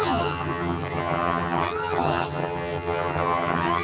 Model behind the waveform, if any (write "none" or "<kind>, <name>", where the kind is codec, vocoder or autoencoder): vocoder, HiFi-GAN